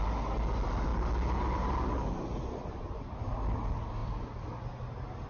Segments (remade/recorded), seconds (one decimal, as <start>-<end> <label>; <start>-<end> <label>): 0.0-5.3 recorded